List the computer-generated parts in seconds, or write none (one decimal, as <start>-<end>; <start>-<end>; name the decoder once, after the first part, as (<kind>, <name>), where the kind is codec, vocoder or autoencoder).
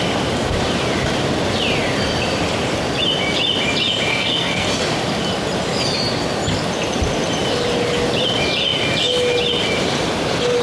4.1-4.7 (codec, SNAC)